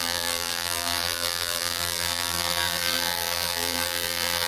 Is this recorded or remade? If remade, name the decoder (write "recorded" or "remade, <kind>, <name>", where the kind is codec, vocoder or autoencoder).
remade, vocoder, BigVGAN v2